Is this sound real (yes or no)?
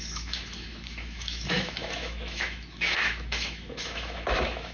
no